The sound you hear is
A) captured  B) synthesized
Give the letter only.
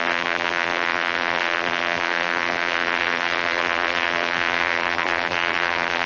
B